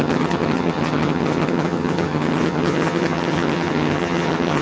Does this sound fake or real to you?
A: fake